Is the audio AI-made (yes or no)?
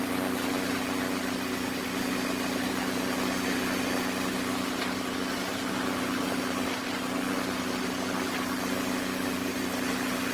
no